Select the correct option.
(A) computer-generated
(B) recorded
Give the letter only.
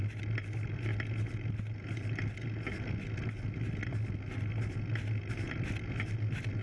B